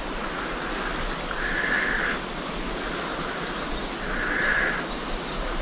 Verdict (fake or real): real